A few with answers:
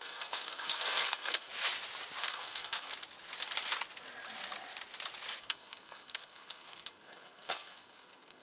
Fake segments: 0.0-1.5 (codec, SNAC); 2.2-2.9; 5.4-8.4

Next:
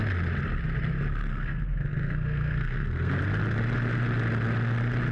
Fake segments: 1.3-3.1 (codec, SNAC)

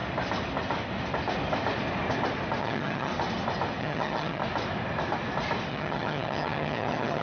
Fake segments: 2.6-3.1 (vocoder, HiFi-GAN); 3.8-4.4; 5.7-7.2

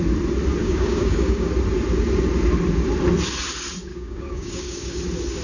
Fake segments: 0.6-1.5 (codec, DAC); 3.9-5.0